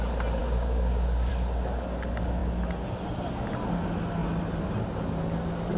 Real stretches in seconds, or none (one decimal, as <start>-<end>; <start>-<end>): 0.0-0.4; 1.3-5.8